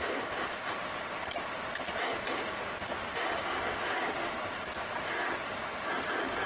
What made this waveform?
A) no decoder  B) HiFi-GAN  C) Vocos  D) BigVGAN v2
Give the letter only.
A